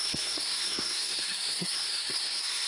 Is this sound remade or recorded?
remade